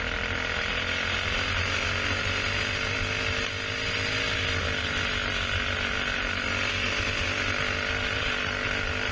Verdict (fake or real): real